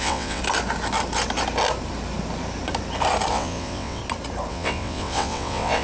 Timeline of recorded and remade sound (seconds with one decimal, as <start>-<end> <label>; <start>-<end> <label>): 0.0-0.4 remade; 0.4-3.3 recorded; 3.3-4.0 remade; 4.0-4.5 recorded; 4.5-5.8 remade